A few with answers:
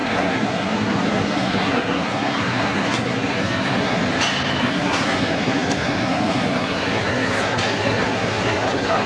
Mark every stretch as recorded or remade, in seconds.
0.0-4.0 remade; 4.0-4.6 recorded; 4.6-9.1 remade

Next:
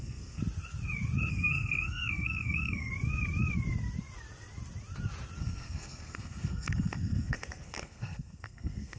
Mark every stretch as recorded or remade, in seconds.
0.0-0.4 remade; 0.4-1.3 recorded; 1.3-2.9 remade; 2.9-5.4 recorded; 5.4-9.0 remade

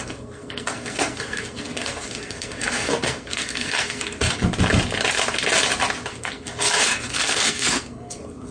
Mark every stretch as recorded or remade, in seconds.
0.0-4.5 remade; 4.5-6.1 recorded; 6.1-8.5 remade

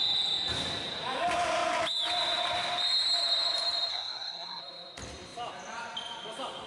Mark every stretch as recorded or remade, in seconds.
0.0-3.9 recorded; 3.9-4.6 remade; 4.6-6.7 recorded